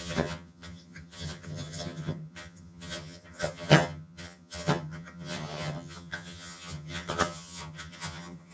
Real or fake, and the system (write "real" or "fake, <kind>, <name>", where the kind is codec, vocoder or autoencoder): fake, vocoder, HiFi-GAN